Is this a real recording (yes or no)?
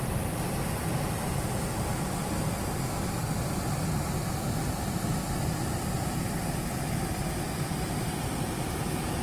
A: yes